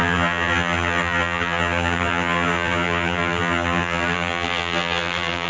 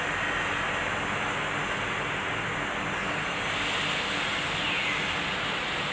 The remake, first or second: first